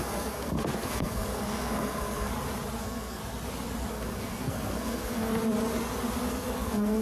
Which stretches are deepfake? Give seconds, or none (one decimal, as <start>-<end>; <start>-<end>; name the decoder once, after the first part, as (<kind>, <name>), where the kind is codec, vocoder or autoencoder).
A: 0.0-2.3 (codec, SNAC); 2.8-3.2; 3.9-5.3; 6.3-7.0